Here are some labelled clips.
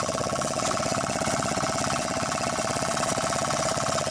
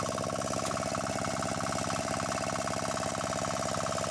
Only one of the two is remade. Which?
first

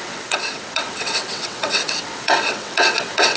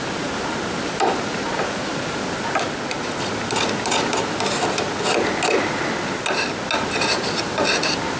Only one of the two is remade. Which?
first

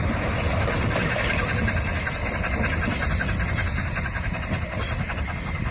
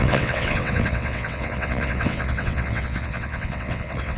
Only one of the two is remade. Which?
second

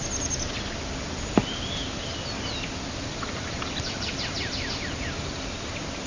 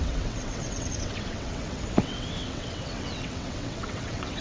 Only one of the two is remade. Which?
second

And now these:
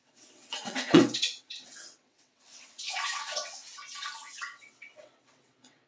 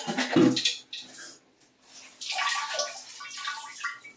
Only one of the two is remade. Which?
first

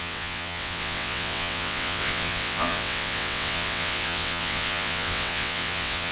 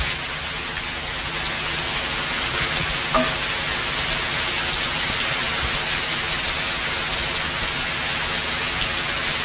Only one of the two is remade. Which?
first